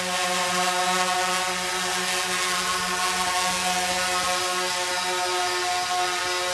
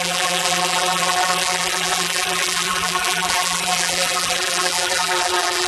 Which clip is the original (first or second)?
first